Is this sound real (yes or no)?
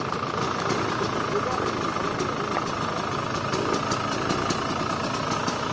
no